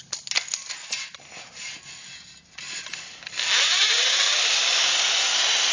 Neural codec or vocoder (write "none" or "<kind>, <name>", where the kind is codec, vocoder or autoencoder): none